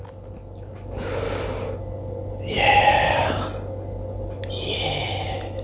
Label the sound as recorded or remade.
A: recorded